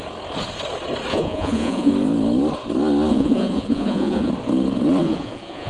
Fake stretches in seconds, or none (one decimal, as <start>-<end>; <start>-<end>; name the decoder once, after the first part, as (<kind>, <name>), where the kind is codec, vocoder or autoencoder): 1.1-1.9 (vocoder, Vocos); 3.1-4.3; 5.0-5.7